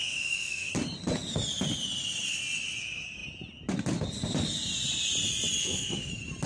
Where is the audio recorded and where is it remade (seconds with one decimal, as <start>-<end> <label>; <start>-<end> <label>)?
0.0-0.7 remade; 0.7-5.6 recorded; 5.6-6.1 remade; 6.1-6.5 recorded